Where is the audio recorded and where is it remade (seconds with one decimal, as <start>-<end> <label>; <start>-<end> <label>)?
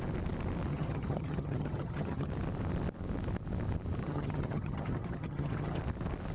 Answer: 0.0-0.7 recorded; 0.7-2.3 remade; 2.3-4.0 recorded; 4.0-5.8 remade; 5.8-6.3 recorded